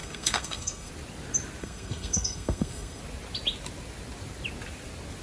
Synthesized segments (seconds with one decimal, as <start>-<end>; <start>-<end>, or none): 0.0-0.9; 1.6-3.0